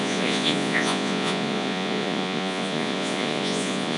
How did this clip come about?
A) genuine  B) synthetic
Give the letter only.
B